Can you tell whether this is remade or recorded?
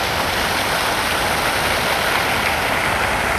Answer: recorded